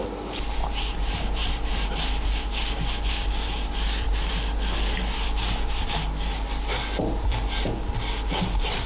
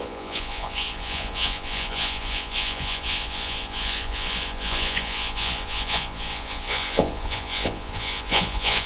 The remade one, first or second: second